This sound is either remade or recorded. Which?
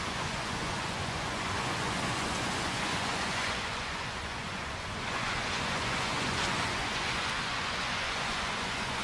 remade